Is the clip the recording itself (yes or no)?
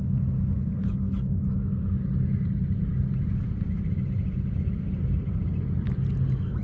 yes